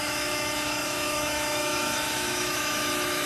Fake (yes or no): yes